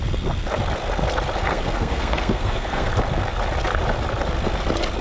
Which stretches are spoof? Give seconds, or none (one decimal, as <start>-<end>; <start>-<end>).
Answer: 1.5-2.9